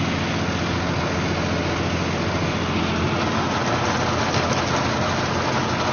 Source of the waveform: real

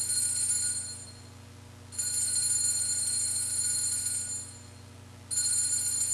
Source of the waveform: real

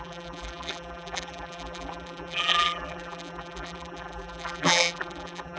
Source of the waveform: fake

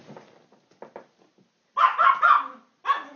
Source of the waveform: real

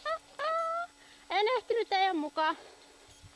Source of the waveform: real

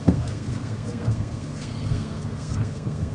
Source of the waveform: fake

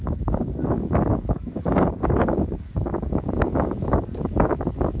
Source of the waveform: fake